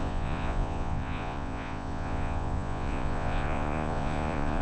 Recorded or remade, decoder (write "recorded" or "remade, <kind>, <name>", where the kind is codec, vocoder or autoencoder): remade, vocoder, Vocos